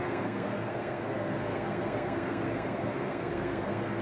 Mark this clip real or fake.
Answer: fake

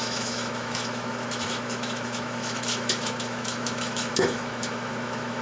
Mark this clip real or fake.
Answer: fake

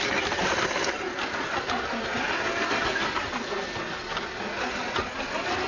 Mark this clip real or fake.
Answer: real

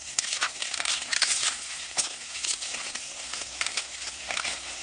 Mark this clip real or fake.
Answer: fake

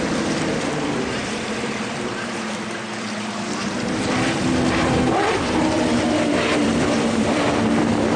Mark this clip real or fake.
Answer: fake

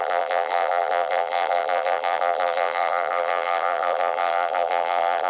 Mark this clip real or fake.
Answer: fake